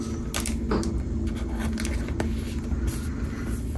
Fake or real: real